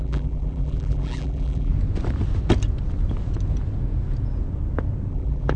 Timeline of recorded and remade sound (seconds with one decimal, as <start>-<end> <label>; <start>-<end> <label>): 0.0-1.7 remade; 1.7-5.1 recorded; 5.1-5.6 remade